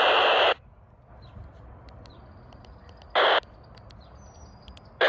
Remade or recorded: recorded